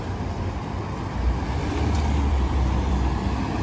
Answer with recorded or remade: remade